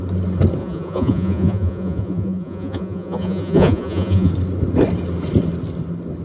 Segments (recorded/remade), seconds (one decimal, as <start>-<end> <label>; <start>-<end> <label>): 0.0-0.6 recorded; 0.6-4.3 remade; 4.3-6.2 recorded